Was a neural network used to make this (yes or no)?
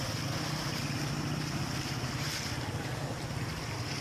no